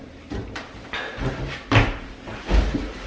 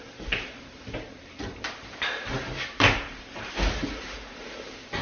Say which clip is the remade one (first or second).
second